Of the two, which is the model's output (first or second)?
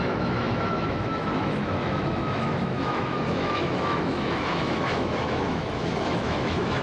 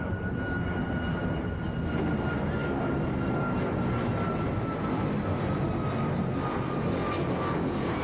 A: first